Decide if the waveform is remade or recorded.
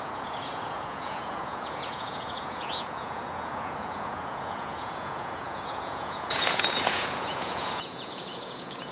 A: remade